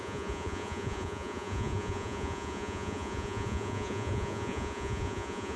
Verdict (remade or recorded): remade